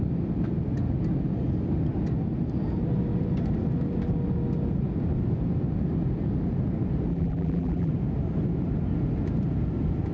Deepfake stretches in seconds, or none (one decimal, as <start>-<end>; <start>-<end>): 7.1-7.9